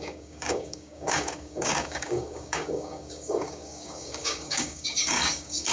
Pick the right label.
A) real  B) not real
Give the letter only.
B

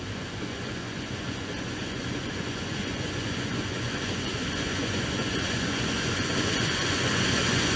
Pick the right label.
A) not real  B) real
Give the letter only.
A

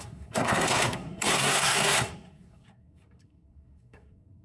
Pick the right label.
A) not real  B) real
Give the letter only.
A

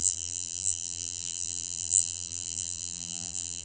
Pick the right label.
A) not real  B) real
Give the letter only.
A